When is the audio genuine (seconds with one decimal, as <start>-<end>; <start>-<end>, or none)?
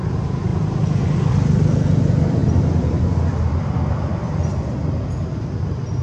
0.0-6.0